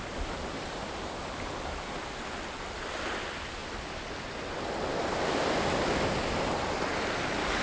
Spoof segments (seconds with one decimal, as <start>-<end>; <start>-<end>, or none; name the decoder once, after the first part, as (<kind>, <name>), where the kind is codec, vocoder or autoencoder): none